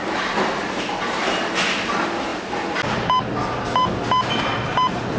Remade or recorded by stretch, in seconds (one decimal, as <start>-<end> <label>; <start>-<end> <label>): 0.0-5.2 recorded